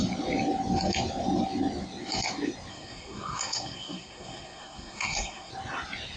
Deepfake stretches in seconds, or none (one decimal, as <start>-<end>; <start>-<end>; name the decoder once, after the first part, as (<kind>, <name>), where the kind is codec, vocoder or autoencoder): 2.7-5.5 (codec, SNAC)